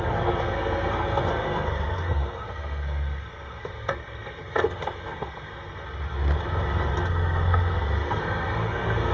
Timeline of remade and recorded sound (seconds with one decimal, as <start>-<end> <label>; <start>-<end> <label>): 0.0-5.8 remade; 5.8-7.1 recorded; 7.1-9.1 remade